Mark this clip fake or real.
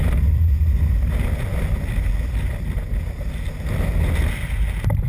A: real